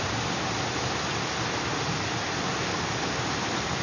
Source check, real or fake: real